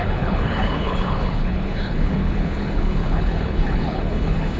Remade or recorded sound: remade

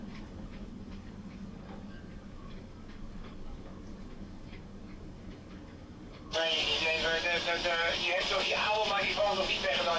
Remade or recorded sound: remade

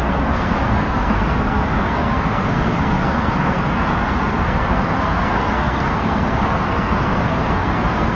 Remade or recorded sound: remade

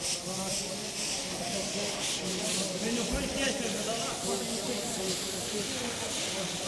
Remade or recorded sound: recorded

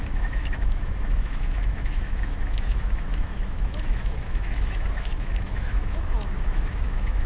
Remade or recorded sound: remade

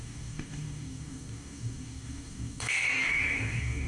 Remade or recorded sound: remade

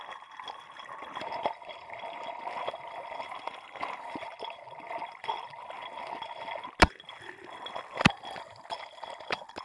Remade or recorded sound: recorded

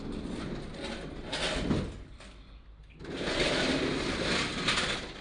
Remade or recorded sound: recorded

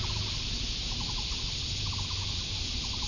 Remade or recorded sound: recorded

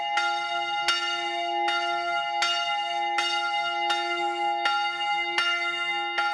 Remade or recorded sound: recorded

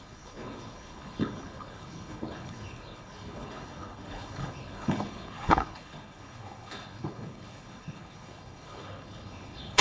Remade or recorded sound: remade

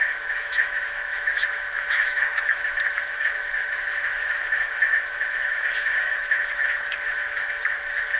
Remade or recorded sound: remade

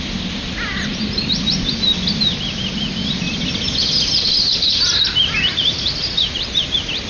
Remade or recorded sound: recorded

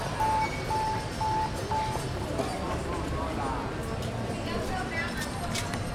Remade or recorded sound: recorded